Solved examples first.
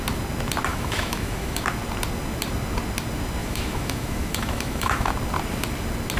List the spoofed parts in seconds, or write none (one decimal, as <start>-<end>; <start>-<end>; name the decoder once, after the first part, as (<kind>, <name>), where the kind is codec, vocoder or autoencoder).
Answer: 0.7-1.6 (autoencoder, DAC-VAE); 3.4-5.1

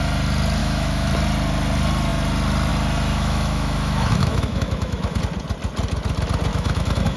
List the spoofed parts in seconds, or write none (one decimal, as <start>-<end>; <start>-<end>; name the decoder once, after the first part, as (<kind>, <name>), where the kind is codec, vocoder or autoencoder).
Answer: 0.6-1.1 (autoencoder, DAC-VAE); 3.1-5.2; 6.5-7.2

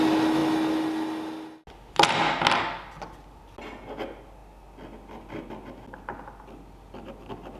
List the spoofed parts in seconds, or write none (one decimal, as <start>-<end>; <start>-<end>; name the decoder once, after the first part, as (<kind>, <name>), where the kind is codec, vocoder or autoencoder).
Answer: none

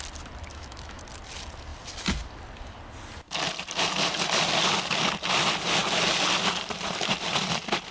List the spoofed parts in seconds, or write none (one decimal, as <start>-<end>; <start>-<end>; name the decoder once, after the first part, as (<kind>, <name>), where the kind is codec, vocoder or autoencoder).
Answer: 0.5-1.0 (autoencoder, DAC-VAE)

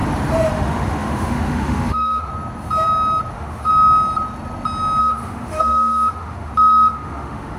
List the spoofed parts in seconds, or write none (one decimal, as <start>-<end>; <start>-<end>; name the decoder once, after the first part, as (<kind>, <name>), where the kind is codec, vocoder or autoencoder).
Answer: 0.5-2.3 (autoencoder, DAC-VAE); 3.3-3.7; 5.0-7.6